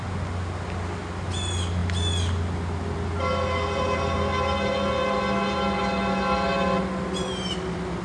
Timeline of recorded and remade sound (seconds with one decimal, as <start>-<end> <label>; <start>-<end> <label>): 0.0-8.0 recorded